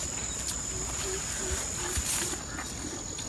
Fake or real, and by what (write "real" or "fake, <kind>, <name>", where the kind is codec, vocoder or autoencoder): real